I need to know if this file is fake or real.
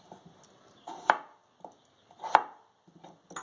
real